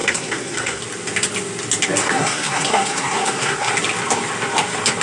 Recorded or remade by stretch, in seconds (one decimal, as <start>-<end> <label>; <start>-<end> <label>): 0.0-0.8 remade; 0.8-2.0 recorded; 2.0-3.7 remade; 3.7-5.0 recorded